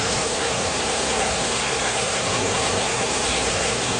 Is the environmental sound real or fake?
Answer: fake